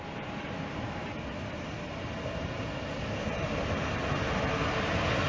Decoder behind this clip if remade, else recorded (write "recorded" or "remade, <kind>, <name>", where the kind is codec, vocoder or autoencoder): recorded